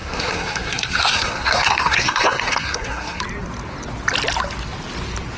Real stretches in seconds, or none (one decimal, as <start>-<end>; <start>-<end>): 3.2-5.4